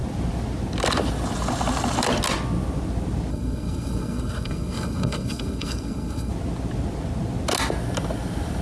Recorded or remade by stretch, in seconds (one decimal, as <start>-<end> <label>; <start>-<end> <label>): 0.0-3.3 recorded; 3.3-6.3 remade; 6.3-8.6 recorded